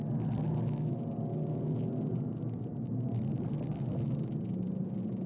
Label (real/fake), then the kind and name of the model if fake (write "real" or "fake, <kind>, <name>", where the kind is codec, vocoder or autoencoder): real